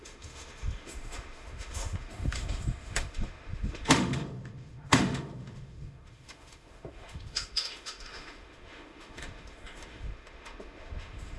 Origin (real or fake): fake